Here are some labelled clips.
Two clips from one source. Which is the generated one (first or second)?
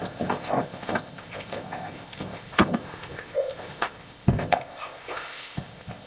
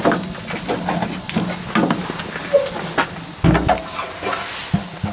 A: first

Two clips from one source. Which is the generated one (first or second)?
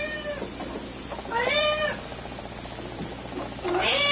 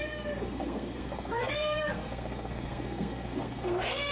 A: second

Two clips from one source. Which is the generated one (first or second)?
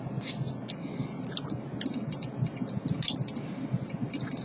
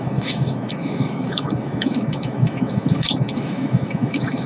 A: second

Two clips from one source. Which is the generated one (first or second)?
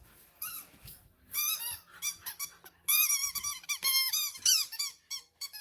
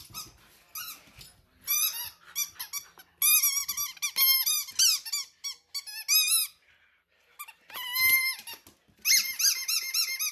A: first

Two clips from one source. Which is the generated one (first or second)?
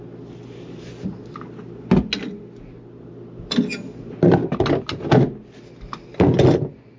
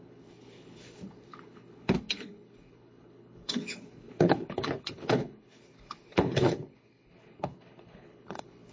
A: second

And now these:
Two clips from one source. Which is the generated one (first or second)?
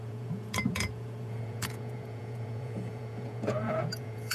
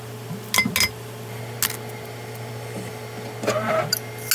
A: first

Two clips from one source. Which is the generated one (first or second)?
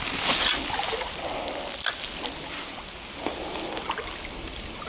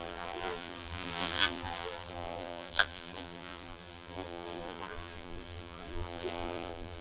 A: second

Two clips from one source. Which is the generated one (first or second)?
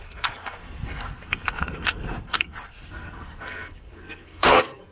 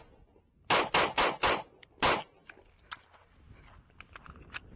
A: first